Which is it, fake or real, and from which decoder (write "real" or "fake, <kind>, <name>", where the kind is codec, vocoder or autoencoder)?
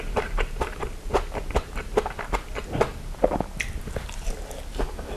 real